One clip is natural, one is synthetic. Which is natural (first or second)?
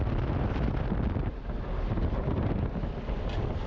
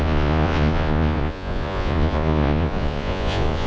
first